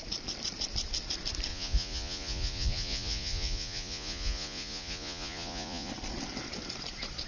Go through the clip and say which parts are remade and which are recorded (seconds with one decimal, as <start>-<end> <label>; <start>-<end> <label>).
0.0-1.5 recorded; 1.5-5.9 remade; 5.9-7.3 recorded